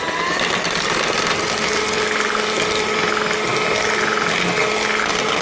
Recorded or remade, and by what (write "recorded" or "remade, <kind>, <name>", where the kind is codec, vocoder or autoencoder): recorded